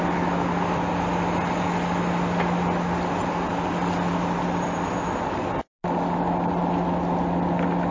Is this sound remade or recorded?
recorded